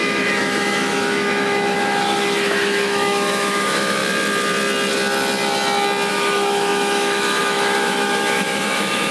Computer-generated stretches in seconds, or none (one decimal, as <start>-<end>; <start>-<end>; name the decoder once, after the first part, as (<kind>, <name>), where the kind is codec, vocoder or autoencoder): 0.0-4.0 (autoencoder, DAC-VAE); 6.1-9.1